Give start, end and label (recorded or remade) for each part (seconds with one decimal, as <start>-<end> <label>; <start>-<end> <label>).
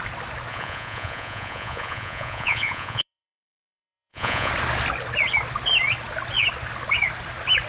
0.0-0.5 recorded; 0.5-4.5 remade; 4.5-7.7 recorded